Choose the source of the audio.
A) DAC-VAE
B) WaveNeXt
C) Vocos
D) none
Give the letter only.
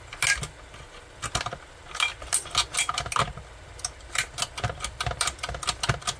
D